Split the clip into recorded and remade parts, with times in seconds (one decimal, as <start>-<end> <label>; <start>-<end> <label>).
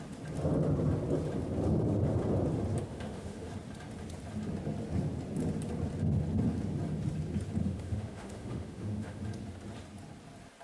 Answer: 0.0-2.9 recorded; 2.9-3.5 remade; 3.5-7.6 recorded; 7.6-9.2 remade; 9.2-10.6 recorded